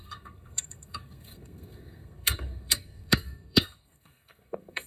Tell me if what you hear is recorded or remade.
remade